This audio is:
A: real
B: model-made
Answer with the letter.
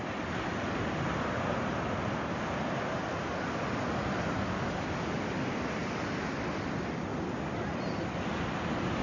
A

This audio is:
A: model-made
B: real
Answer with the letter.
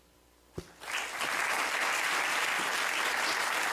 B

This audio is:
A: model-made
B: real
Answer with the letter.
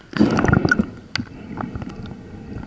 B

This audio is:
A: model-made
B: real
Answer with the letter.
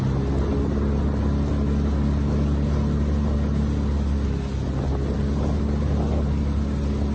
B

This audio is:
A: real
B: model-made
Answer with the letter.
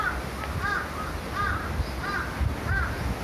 A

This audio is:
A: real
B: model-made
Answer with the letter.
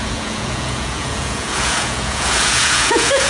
B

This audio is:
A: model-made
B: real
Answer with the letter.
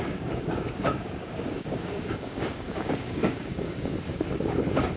A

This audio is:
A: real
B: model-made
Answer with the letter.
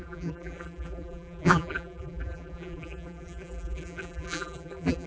B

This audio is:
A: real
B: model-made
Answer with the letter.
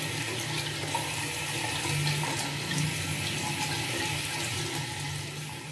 A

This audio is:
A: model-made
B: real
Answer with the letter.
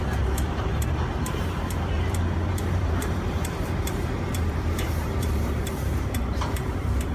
A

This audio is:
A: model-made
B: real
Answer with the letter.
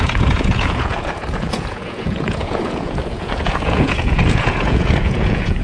A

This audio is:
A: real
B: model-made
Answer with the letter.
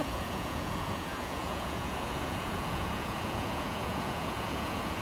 B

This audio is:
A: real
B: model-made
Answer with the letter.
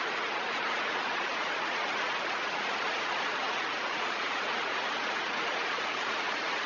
B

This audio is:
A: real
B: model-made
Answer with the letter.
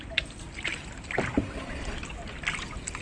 A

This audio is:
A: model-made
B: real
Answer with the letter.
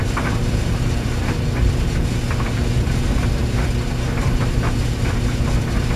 A